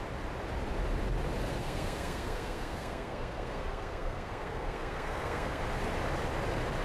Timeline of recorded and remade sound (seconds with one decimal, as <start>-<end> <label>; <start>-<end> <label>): 0.0-1.5 recorded; 1.5-5.6 remade; 5.6-6.8 recorded